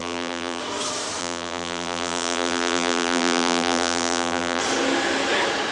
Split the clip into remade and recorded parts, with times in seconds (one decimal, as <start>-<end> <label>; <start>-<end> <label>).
0.0-0.6 remade; 0.6-1.2 recorded; 1.2-4.6 remade; 4.6-5.7 recorded